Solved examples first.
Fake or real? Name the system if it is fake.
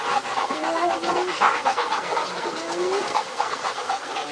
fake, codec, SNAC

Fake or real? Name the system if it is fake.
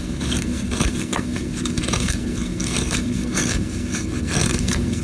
fake, codec, SNAC